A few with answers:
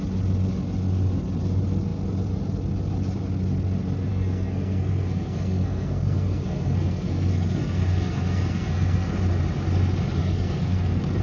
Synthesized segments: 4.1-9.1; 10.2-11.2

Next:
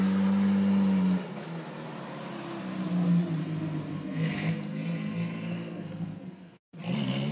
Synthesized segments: 3.4-6.8

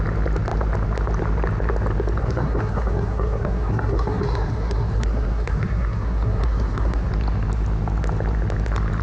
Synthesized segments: 2.2-7.1

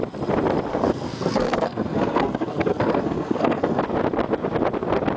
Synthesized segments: 0.7-3.8

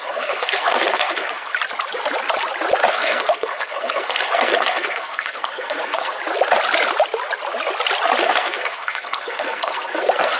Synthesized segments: 0.0-1.5; 2.9-6.2; 8.2-10.4

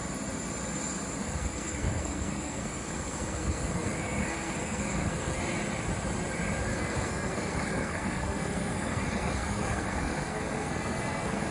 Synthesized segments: 1.2-5.4; 6.7-11.5

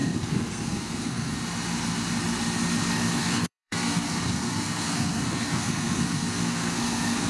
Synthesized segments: 0.0-1.3; 2.9-7.3

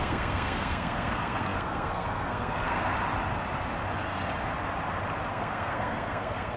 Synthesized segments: 0.0-2.8; 5.3-6.6